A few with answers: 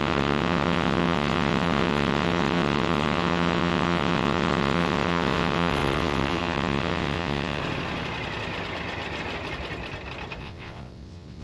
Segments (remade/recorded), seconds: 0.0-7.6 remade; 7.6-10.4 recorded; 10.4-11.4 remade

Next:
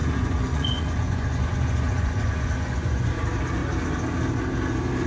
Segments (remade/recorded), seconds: 0.0-3.1 remade; 3.1-5.1 recorded

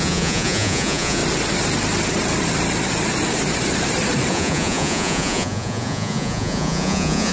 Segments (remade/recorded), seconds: 0.0-1.2 remade; 1.2-4.3 recorded; 4.3-7.3 remade

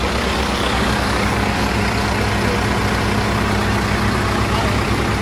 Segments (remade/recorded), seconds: 0.0-0.4 recorded; 0.4-1.7 remade; 1.7-5.2 recorded